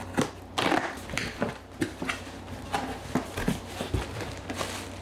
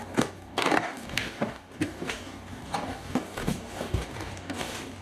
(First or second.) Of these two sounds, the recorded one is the first